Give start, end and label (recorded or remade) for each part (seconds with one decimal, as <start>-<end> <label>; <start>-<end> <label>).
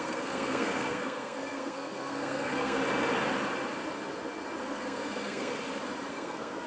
0.0-2.8 remade; 2.8-4.6 recorded; 4.6-5.5 remade; 5.5-6.1 recorded; 6.1-6.7 remade